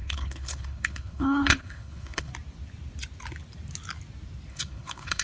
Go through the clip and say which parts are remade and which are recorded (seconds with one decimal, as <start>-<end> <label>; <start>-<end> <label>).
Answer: 0.0-2.3 remade; 2.3-4.5 recorded; 4.5-5.2 remade